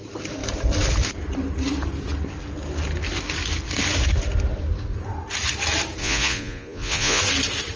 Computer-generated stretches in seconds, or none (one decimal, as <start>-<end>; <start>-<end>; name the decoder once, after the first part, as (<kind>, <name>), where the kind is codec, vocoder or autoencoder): 6.0-7.2 (vocoder, Vocos)